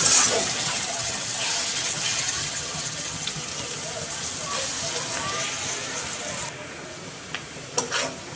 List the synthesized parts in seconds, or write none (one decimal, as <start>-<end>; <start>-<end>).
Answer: 0.0-3.5